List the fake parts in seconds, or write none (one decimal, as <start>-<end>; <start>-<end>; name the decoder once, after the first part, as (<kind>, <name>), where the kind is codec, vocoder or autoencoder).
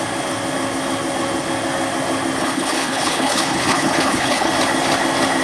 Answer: 2.4-4.5 (codec, HILCodec)